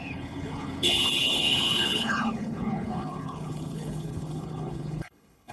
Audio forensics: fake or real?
fake